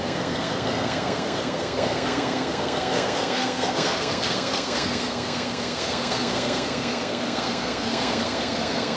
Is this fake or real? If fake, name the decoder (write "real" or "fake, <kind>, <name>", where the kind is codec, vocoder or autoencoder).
fake, codec, SNAC